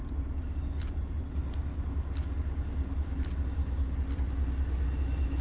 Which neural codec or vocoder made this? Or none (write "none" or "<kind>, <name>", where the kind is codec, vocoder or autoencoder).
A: none